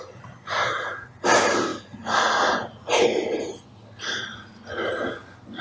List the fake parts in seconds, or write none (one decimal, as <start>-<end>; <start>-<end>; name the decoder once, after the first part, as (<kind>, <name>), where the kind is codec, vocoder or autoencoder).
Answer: none

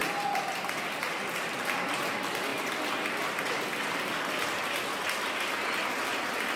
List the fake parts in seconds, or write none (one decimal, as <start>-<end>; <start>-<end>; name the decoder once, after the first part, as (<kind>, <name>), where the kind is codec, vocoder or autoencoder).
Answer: 0.0-1.9 (vocoder, BigVGAN v2)